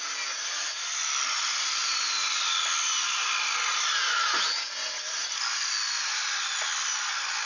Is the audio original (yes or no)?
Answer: yes